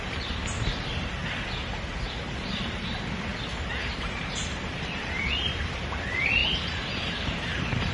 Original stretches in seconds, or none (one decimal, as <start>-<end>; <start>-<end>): 3.3-4.0